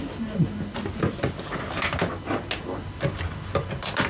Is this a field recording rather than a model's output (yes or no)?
yes